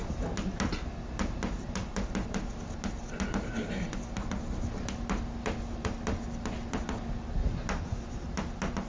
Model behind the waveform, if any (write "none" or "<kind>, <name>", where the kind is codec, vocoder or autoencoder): none